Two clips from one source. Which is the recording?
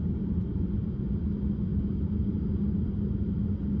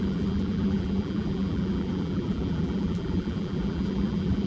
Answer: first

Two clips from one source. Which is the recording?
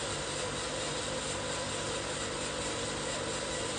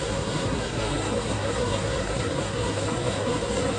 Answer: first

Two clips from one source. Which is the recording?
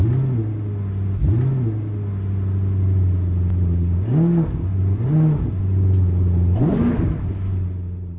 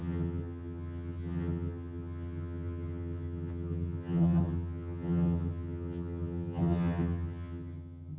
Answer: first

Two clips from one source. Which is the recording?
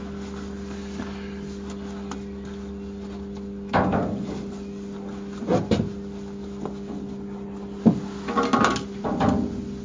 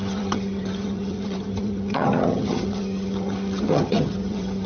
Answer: first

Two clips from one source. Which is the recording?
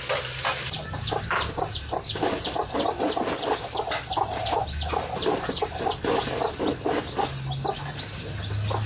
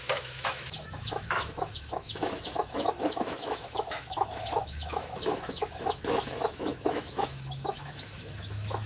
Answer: first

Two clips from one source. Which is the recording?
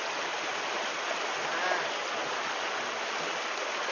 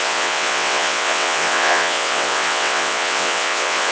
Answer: first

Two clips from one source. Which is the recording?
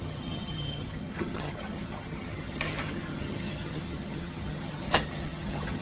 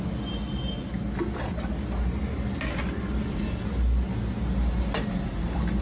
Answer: second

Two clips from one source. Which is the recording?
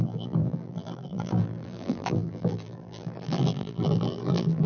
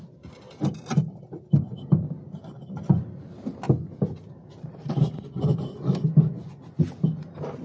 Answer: second